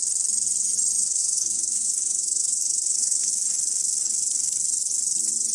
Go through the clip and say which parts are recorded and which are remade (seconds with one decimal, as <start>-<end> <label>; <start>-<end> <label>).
0.0-1.0 recorded; 1.0-3.3 remade; 3.3-5.5 recorded

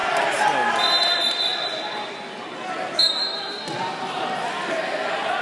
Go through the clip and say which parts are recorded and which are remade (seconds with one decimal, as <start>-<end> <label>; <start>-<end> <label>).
0.0-5.4 recorded

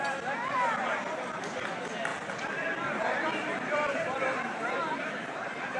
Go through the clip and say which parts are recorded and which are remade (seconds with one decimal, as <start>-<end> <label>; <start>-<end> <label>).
0.0-2.1 recorded; 2.1-5.8 remade